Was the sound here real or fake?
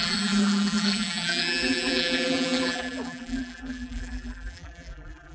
fake